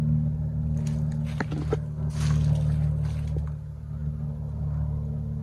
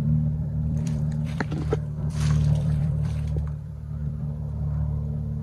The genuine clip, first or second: first